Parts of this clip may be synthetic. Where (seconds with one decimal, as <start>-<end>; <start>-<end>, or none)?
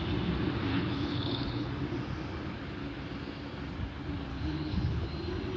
0.7-1.7; 4.3-5.1